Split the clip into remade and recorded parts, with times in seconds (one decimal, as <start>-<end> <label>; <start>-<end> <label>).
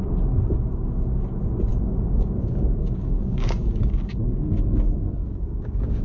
0.0-1.7 recorded; 1.7-4.7 remade; 4.7-5.2 recorded; 5.2-6.0 remade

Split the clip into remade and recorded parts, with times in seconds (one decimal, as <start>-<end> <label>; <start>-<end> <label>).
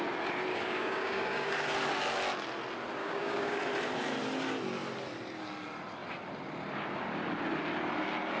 0.0-0.5 recorded; 0.5-1.5 remade; 1.5-3.0 recorded; 3.0-3.6 remade; 3.6-8.4 recorded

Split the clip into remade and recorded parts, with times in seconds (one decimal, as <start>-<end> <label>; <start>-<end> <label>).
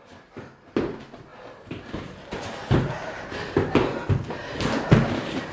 0.0-5.5 recorded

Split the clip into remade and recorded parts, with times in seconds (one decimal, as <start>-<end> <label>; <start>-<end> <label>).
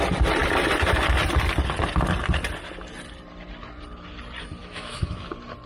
0.0-4.6 recorded; 4.6-5.3 remade; 5.3-5.7 recorded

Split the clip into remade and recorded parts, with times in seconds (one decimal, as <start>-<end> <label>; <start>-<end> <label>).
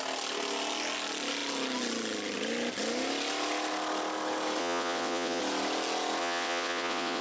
0.0-4.6 recorded; 4.6-5.4 remade; 5.4-6.2 recorded; 6.2-7.2 remade